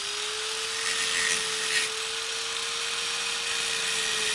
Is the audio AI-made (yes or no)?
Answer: no